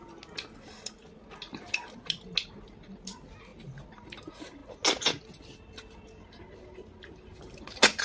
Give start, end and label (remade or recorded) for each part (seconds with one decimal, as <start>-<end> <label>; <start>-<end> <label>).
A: 0.0-8.0 recorded